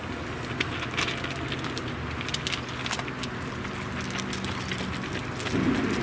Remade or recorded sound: recorded